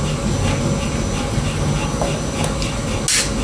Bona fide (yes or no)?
yes